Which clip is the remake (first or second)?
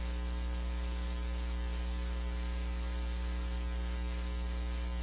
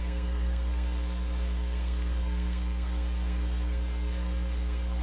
second